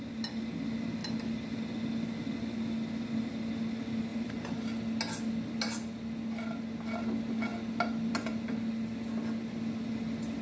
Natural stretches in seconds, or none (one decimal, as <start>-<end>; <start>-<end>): 0.0-4.1; 4.6-10.4